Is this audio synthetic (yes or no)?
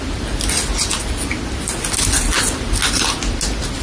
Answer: no